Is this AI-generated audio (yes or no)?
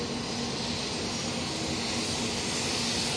no